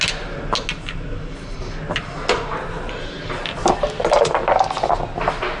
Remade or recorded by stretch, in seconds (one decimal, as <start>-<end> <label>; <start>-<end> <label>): 0.0-5.6 recorded